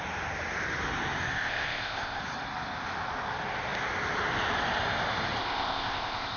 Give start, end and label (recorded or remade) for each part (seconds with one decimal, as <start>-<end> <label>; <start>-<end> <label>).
0.0-1.3 recorded; 1.3-2.2 remade; 2.2-5.4 recorded; 5.4-6.4 remade

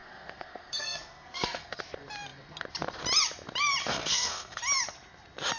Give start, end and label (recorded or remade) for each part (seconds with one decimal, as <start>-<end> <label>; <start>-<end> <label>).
0.0-1.8 remade; 1.8-3.8 recorded; 3.8-4.6 remade; 4.6-5.6 recorded

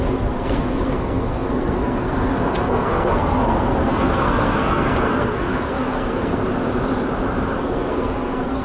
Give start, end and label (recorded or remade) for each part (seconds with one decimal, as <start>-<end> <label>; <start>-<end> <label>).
0.0-6.4 remade; 6.4-7.6 recorded; 7.6-8.6 remade

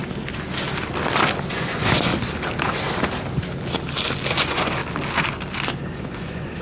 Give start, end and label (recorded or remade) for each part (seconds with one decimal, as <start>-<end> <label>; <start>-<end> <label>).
0.0-1.5 recorded; 1.5-2.1 remade; 2.1-4.3 recorded; 4.3-4.8 remade; 4.8-5.7 recorded; 5.7-6.6 remade

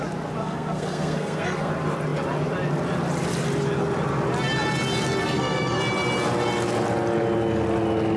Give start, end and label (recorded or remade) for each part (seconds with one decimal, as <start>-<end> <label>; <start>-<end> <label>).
0.0-0.4 recorded; 0.4-1.7 remade; 1.7-5.2 recorded; 5.2-5.8 remade; 5.8-8.2 recorded